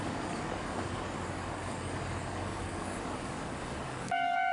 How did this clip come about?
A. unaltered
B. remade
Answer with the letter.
B